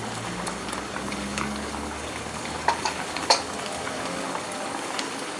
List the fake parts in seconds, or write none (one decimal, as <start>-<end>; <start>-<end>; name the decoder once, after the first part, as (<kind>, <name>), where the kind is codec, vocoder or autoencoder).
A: 0.0-5.4 (codec, DAC)